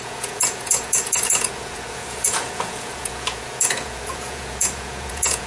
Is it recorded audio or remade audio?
remade